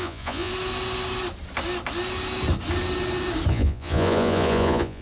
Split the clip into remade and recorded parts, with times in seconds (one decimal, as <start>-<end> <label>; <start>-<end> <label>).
0.0-0.5 remade; 0.5-3.5 recorded; 3.5-5.0 remade